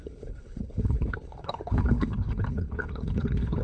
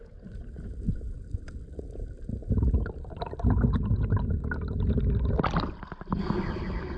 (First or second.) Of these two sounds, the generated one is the first